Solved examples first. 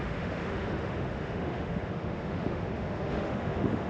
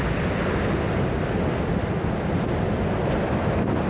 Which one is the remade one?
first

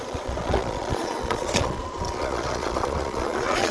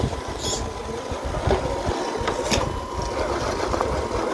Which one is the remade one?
first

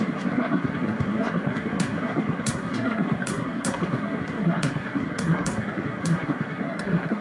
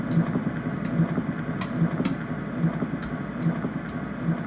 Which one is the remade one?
first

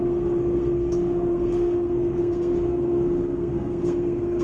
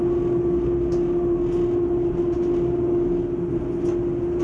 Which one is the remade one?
first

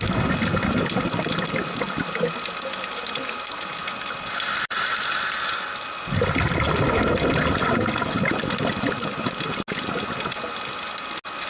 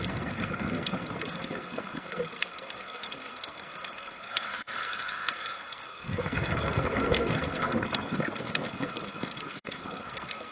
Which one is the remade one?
second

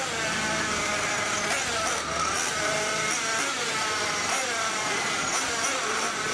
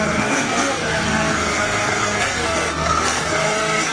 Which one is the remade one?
second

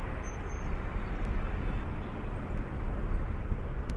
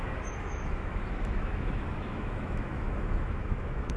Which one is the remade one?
second